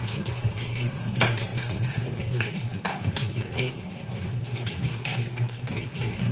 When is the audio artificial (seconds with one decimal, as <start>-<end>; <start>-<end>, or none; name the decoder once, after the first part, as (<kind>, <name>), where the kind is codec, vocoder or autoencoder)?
0.0-6.3 (codec, SNAC)